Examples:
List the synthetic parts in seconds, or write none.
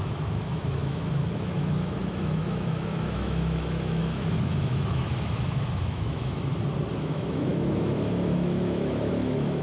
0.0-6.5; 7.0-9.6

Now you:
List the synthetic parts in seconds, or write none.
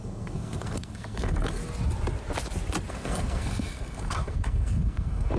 0.0-1.6; 2.9-5.4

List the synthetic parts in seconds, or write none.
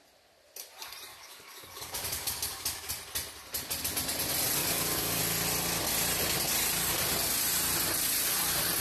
1.1-2.9; 4.6-5.2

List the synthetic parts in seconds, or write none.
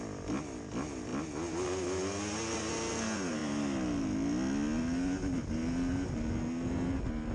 none